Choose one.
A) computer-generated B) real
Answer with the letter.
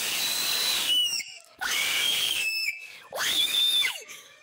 A